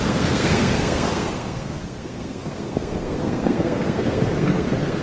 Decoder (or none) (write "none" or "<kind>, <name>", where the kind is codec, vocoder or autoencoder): codec, SNAC